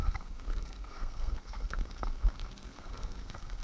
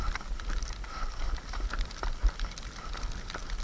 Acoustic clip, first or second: second